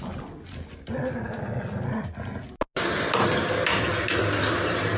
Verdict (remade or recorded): recorded